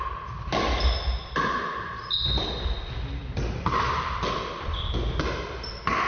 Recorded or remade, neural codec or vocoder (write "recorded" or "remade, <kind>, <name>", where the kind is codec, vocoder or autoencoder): recorded